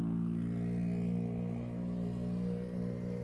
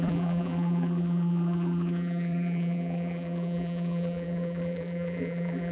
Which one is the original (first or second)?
first